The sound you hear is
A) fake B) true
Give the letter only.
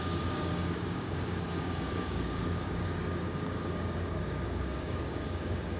A